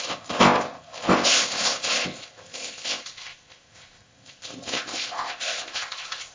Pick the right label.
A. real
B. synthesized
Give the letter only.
B